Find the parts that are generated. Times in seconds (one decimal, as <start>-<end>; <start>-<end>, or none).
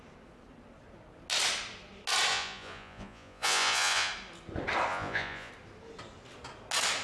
2.3-4.1; 4.9-5.5